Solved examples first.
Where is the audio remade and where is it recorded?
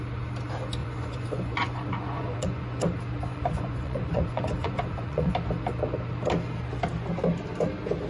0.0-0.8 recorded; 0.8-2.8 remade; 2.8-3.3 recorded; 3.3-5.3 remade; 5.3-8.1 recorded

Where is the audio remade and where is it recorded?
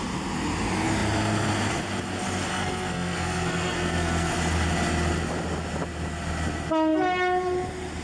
0.0-2.5 recorded; 2.5-4.3 remade; 4.3-8.0 recorded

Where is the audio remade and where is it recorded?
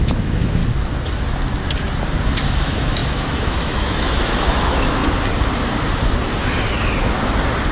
0.0-0.6 remade; 0.6-2.6 recorded; 2.6-5.0 remade; 5.0-7.7 recorded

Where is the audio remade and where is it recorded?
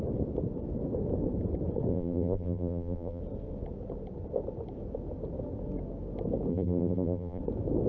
0.0-1.9 recorded; 1.9-3.2 remade; 3.2-6.5 recorded; 6.5-7.4 remade; 7.4-7.9 recorded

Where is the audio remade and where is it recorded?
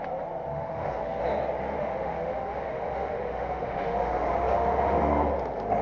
0.0-0.5 recorded; 0.5-1.2 remade; 1.2-1.8 recorded; 1.8-5.3 remade; 5.3-5.8 recorded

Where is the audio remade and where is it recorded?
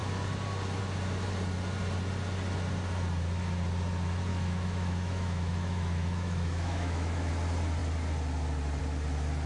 0.0-4.3 recorded; 4.3-7.3 remade; 7.3-9.5 recorded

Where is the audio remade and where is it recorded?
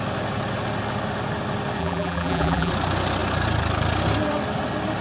0.0-1.8 recorded; 1.8-2.7 remade; 2.7-5.0 recorded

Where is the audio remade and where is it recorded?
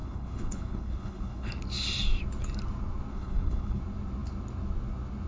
0.0-1.5 remade; 1.5-3.1 recorded; 3.1-3.8 remade; 3.8-5.3 recorded